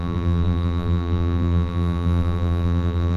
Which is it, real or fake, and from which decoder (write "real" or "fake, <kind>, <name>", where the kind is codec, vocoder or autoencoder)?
fake, vocoder, BigVGAN v2